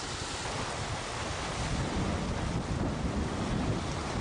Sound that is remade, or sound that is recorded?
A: recorded